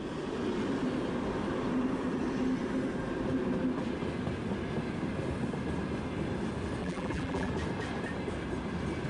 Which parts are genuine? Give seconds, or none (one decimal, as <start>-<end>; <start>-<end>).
0.0-6.8; 7.5-9.1